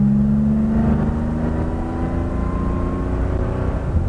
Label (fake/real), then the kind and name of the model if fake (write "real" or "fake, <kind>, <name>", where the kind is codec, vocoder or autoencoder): real